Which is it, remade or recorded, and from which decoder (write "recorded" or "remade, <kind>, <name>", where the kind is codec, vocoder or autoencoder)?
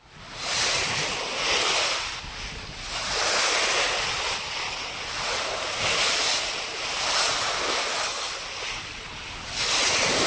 recorded